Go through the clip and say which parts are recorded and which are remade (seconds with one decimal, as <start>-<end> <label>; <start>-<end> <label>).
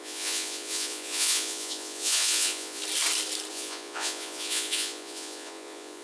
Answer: 0.0-2.8 remade; 2.8-3.5 recorded; 3.5-6.0 remade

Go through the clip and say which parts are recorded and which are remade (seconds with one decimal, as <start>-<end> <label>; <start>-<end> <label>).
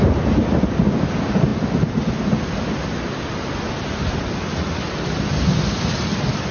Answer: 0.0-6.5 recorded